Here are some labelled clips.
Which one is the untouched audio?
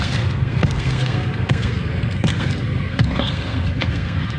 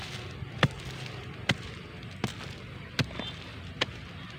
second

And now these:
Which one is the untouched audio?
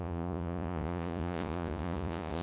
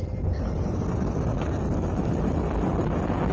second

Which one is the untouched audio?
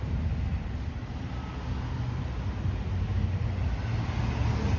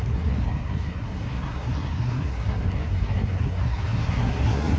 first